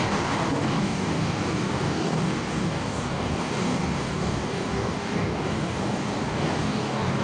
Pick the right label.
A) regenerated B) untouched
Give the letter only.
A